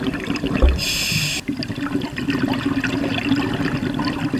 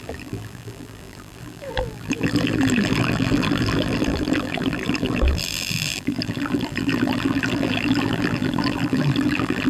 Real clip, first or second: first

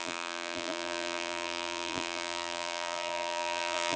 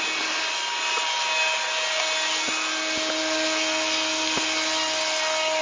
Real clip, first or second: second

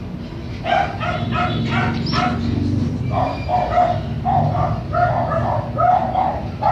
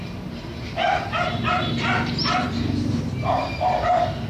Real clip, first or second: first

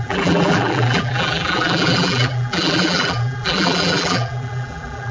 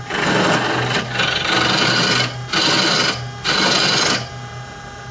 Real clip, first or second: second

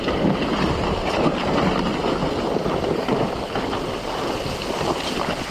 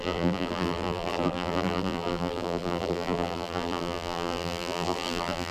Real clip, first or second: first